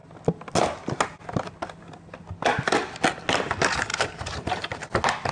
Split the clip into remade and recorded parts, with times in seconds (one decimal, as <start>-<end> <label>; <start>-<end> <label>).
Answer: 0.0-3.9 recorded; 3.9-4.8 remade; 4.8-5.3 recorded